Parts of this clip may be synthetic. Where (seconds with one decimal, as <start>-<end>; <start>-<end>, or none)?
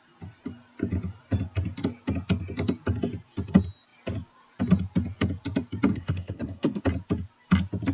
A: 5.9-6.8